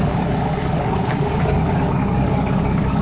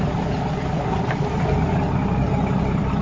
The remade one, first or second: first